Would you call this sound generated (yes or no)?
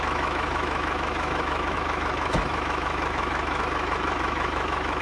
yes